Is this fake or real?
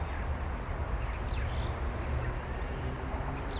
real